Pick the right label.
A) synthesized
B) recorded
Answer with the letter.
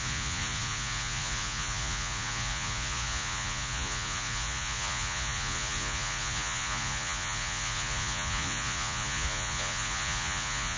A